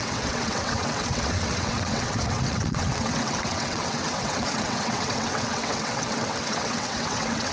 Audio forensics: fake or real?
fake